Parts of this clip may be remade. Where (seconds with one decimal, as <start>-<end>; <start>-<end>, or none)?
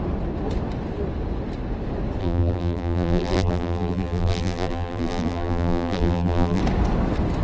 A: 2.2-6.6